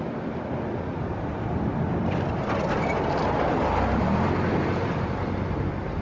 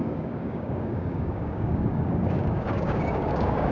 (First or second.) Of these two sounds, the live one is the first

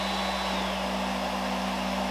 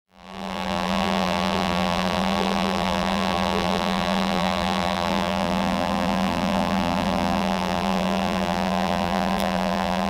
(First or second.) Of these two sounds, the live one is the first